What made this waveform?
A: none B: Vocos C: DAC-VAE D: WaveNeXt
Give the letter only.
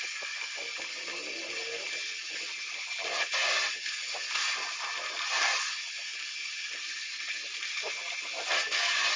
A